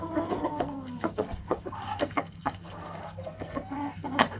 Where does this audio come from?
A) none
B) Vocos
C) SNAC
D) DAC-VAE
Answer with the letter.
C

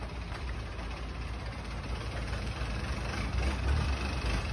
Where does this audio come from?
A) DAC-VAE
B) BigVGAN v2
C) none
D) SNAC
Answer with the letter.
C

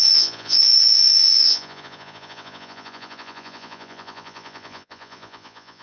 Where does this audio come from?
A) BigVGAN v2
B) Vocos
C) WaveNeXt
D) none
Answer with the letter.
B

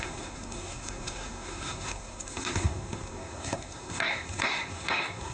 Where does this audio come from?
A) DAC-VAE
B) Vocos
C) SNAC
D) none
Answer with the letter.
C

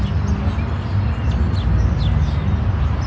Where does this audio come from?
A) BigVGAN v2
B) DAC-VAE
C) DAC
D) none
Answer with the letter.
D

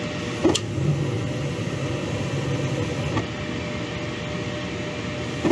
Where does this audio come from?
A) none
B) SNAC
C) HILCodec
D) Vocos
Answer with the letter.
A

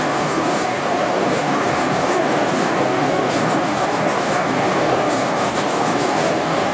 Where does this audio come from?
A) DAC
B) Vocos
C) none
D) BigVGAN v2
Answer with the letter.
A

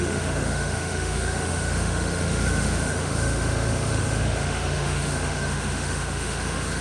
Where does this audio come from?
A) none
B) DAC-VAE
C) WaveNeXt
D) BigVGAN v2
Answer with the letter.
B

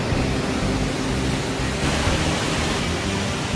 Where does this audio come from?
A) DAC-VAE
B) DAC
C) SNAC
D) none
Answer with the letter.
D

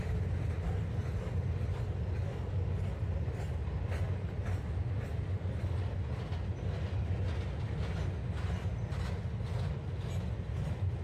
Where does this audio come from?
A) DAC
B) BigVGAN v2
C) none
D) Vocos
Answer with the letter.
C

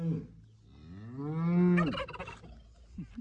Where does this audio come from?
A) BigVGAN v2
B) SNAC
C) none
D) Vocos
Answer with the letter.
C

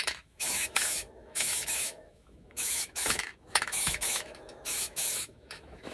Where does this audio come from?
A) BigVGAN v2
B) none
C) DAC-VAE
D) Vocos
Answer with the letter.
C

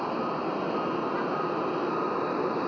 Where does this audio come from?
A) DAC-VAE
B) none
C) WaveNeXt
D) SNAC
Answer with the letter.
B